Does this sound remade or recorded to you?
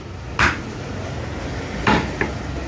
recorded